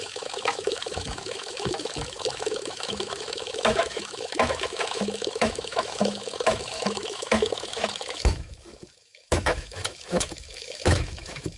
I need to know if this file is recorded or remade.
remade